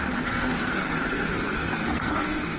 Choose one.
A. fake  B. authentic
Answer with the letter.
A